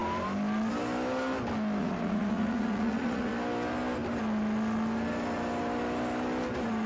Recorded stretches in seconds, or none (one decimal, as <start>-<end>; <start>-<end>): 0.0-1.8; 3.3-6.9